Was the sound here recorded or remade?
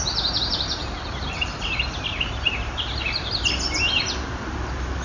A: recorded